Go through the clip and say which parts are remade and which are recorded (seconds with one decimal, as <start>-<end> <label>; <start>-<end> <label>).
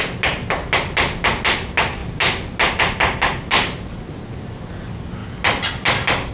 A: 0.0-6.3 recorded